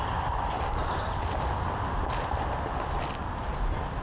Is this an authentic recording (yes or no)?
yes